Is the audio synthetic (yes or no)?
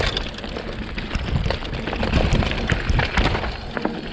no